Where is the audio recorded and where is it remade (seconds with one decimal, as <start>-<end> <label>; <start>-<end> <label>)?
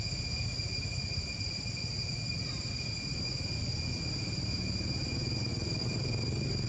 0.0-0.4 recorded; 0.4-2.3 remade; 2.3-5.5 recorded; 5.5-6.7 remade